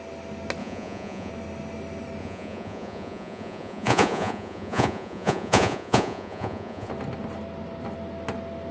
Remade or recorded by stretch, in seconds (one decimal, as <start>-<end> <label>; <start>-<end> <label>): 0.0-0.6 recorded; 0.6-1.3 remade; 1.3-2.2 recorded; 2.2-6.9 remade; 6.9-8.7 recorded